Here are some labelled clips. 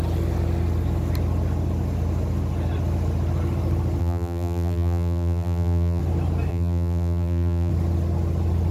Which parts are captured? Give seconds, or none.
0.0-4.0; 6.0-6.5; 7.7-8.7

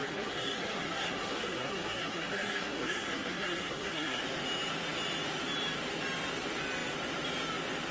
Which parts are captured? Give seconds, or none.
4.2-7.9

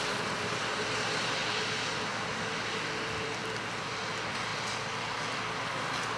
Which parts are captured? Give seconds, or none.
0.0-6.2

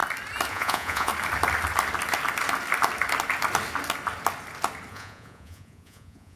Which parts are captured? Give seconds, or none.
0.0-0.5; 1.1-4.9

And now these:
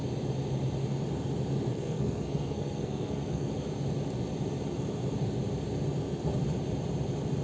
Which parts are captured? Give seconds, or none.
0.0-1.7; 3.5-7.4

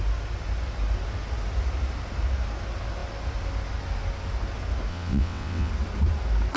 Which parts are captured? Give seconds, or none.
0.0-4.9; 5.7-6.6

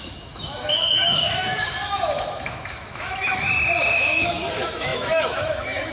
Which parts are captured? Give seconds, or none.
none